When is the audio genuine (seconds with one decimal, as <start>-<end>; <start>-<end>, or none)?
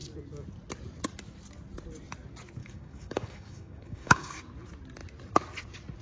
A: 0.0-2.6; 4.4-6.0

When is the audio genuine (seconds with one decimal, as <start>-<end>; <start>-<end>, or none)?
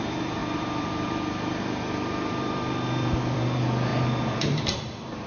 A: none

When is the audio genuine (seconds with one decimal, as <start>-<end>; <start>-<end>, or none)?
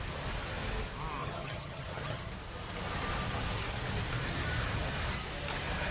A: 0.0-1.2; 2.3-5.9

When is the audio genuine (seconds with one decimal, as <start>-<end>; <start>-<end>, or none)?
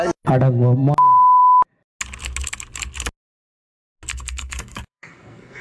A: 0.0-4.1